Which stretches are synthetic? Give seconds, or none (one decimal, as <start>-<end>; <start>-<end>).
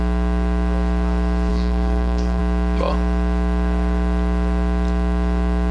1.5-2.4